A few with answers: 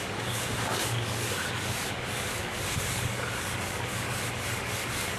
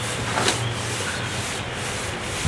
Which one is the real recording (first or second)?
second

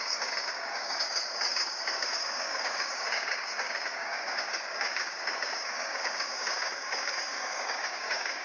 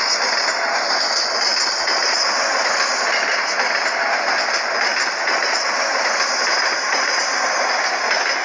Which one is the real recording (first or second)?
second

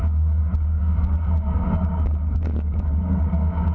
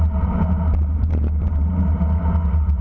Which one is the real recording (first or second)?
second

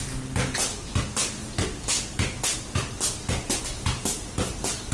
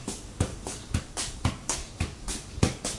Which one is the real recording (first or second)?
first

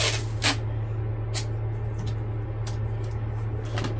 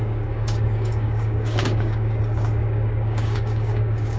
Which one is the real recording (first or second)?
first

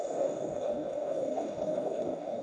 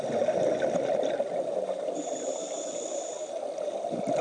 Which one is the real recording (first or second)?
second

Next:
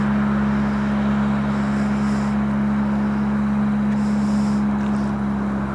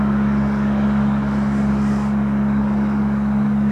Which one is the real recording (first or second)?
first